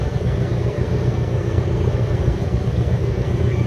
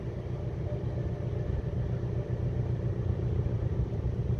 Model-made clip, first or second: first